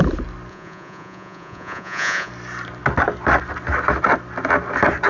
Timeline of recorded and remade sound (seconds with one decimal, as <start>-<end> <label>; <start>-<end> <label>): 0.0-0.5 recorded; 0.5-2.3 remade; 2.3-5.1 recorded